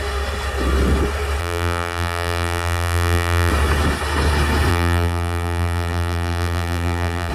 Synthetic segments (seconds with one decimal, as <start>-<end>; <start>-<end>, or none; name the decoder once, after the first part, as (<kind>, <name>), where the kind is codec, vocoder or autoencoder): 1.4-3.5 (vocoder, BigVGAN v2); 4.7-7.3